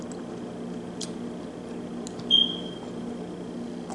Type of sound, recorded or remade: recorded